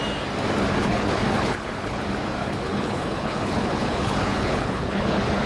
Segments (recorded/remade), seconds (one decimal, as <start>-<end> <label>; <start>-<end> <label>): 0.0-0.8 recorded; 0.8-2.0 remade; 2.0-2.4 recorded; 2.4-5.5 remade